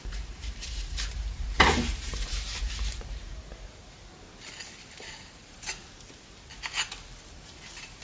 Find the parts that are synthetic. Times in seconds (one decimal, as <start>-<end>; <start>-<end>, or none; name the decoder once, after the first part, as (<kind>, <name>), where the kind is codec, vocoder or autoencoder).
0.0-4.0 (vocoder, BigVGAN v2); 5.2-5.8; 7.3-8.0